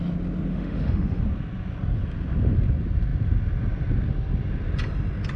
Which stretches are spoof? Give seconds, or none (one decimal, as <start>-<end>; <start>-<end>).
0.5-1.2